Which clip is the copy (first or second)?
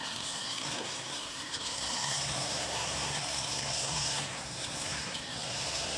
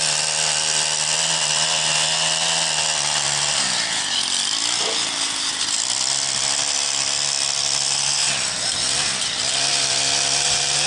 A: first